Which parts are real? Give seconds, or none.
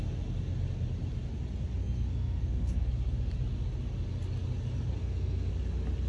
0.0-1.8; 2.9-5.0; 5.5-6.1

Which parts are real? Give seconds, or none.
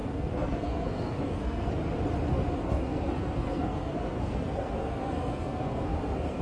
1.7-2.6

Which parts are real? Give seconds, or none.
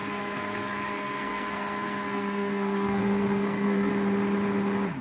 3.9-5.0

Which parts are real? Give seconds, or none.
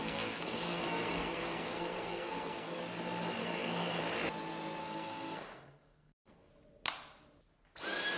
2.8-3.4; 4.0-4.8; 6.5-8.2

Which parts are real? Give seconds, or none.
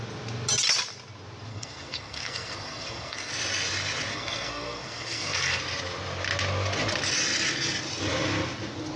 0.0-1.5; 3.3-4.1; 5.6-9.0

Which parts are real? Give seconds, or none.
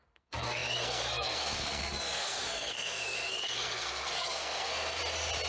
5.0-5.5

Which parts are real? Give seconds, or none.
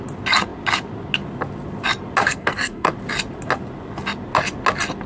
0.0-2.2; 2.9-5.1